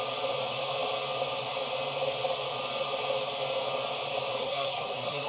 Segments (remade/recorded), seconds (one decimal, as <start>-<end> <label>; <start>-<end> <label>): 0.0-4.4 recorded; 4.4-5.3 remade